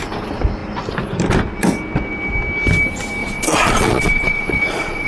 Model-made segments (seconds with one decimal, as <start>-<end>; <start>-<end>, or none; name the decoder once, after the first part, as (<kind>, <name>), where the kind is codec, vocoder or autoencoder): 3.2-5.1 (vocoder, Vocos)